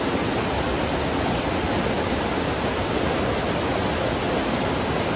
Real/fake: real